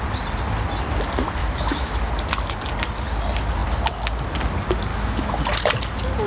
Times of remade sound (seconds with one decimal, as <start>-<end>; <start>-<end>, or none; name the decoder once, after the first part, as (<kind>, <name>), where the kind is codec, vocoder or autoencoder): 1.4-2.1 (autoencoder, DAC-VAE); 4.9-5.4